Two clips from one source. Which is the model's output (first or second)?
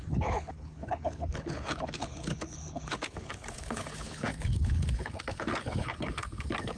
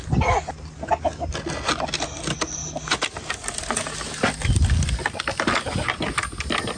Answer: first